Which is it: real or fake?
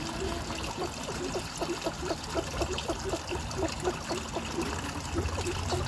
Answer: real